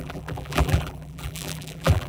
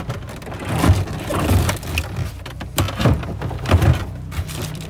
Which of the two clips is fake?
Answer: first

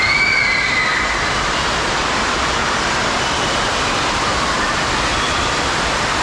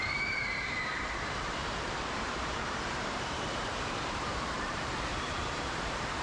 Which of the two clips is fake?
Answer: second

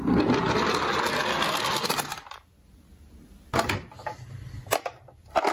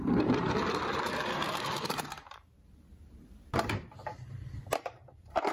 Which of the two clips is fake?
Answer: second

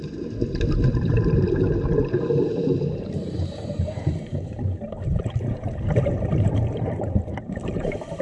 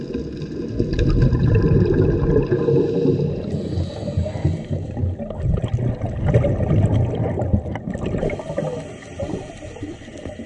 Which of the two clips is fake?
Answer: first